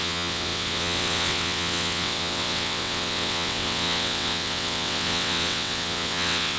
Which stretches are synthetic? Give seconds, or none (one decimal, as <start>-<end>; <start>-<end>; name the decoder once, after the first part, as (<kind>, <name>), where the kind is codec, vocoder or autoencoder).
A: 0.0-6.6 (vocoder, WaveNeXt)